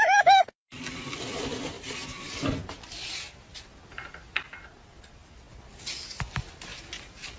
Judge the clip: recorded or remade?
recorded